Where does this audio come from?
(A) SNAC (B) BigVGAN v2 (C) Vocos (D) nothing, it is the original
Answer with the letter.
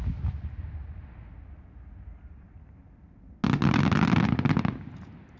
D